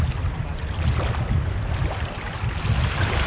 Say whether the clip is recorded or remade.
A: recorded